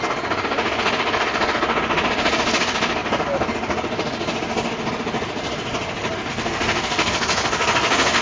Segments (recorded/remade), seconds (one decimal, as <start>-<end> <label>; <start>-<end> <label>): 0.0-6.3 recorded; 6.3-8.2 remade